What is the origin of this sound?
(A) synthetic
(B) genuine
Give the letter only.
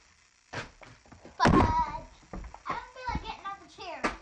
B